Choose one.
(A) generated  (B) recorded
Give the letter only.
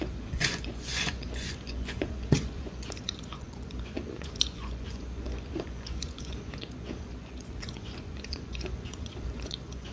A